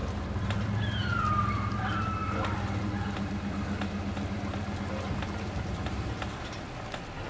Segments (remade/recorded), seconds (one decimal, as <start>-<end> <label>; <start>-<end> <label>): 0.0-7.3 recorded